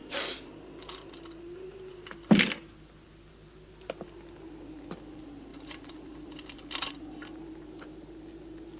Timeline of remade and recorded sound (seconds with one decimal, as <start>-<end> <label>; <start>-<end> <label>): 0.0-0.5 remade; 0.5-5.5 recorded; 5.5-6.9 remade; 6.9-8.8 recorded